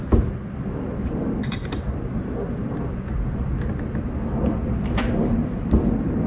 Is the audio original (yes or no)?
yes